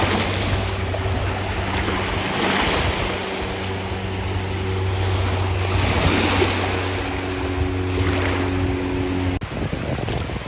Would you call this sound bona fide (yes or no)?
yes